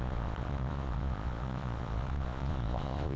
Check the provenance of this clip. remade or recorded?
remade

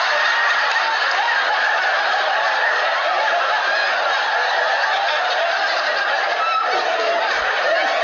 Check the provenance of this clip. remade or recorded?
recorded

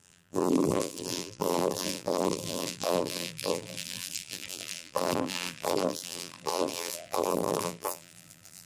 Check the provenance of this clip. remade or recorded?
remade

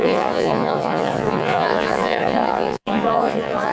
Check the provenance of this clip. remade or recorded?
remade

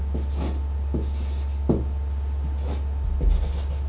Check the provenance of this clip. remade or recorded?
recorded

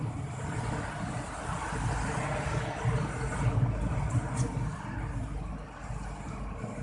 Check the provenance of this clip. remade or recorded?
recorded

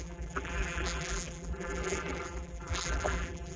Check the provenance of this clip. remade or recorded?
remade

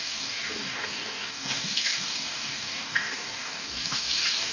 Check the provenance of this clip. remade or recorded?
remade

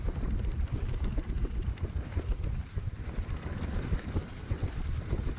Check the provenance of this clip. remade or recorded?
recorded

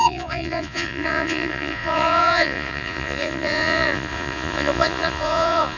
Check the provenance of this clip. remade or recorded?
remade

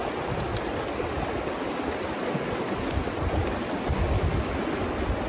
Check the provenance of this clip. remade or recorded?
recorded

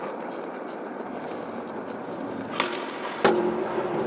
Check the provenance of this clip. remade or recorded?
recorded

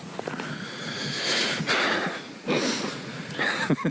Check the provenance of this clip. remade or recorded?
remade